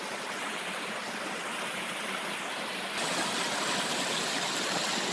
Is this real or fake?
real